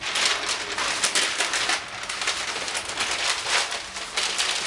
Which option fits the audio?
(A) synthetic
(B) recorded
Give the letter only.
B